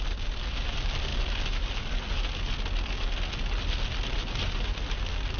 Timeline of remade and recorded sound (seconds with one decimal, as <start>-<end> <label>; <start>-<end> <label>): 0.0-5.4 recorded